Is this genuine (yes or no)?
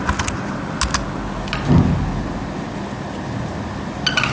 yes